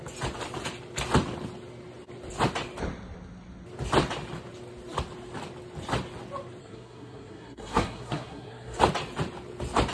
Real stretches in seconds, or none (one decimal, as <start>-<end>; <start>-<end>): 0.0-6.6; 8.8-9.9